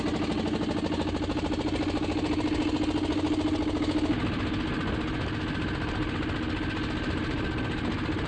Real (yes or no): yes